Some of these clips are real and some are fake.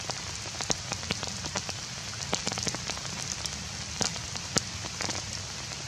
real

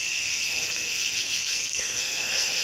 fake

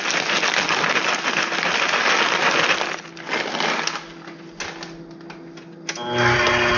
real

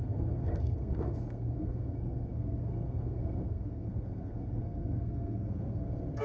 fake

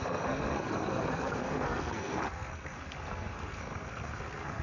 fake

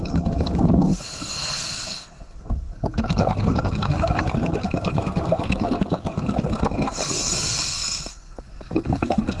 fake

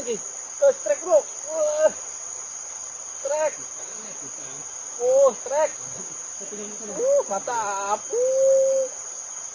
real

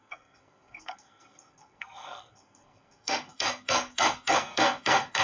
fake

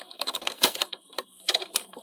fake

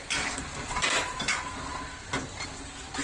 real